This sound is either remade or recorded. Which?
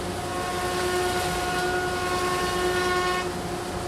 recorded